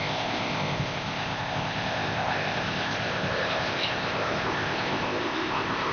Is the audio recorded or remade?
remade